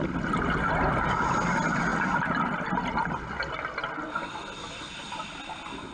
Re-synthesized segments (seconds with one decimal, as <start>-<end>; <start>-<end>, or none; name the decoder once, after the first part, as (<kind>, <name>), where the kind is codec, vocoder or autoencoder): none

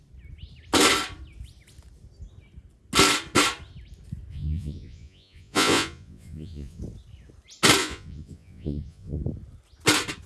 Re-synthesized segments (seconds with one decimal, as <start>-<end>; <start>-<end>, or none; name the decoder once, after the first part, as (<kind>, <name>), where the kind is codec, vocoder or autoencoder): 4.3-6.8 (vocoder, Vocos); 7.8-9.2

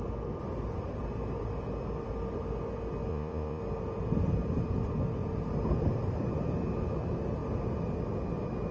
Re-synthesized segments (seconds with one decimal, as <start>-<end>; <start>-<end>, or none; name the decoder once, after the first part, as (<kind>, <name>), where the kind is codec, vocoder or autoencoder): 3.1-3.6 (vocoder, Vocos)